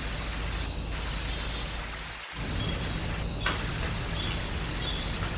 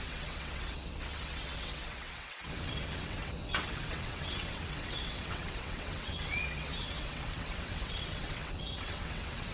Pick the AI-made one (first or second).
second